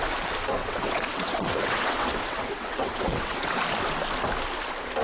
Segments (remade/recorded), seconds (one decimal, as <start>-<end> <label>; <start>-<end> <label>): 0.0-0.6 recorded; 0.6-3.6 remade; 3.6-5.0 recorded